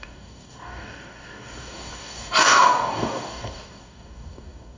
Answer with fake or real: fake